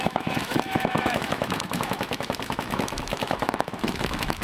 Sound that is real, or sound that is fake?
fake